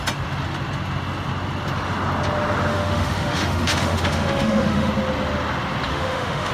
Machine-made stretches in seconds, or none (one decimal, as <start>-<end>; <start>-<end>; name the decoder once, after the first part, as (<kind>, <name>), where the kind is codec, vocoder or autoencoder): 2.7-4.9 (autoencoder, DAC-VAE); 5.9-6.5